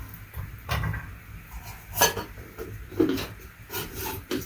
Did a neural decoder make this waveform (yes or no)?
yes